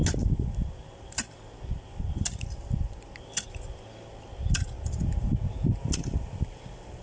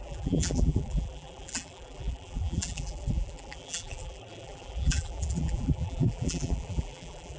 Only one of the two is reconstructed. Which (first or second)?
second